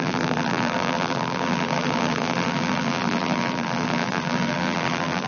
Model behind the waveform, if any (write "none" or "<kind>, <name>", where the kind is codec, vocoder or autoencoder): vocoder, BigVGAN v2